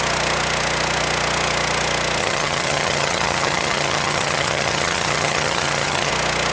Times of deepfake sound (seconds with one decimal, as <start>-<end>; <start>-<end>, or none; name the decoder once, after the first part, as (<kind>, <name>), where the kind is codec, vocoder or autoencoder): 2.2-6.1 (vocoder, HiFi-GAN)